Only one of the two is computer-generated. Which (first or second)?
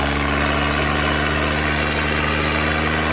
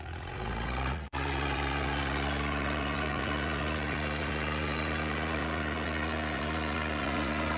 second